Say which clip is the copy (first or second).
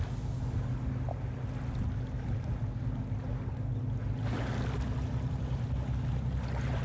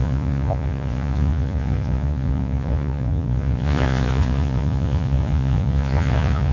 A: second